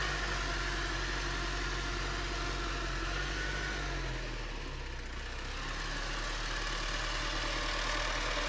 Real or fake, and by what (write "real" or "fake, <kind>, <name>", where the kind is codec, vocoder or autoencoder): real